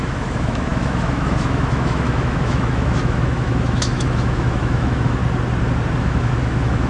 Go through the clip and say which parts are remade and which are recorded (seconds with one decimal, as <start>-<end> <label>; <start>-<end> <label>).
0.0-5.2 remade; 5.2-6.0 recorded; 6.0-6.9 remade